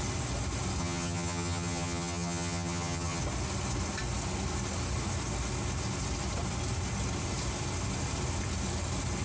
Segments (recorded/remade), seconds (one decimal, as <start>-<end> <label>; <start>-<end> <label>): 0.0-0.8 recorded; 0.8-3.2 remade; 3.2-9.2 recorded